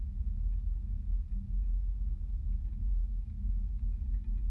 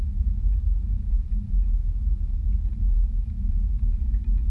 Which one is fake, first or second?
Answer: second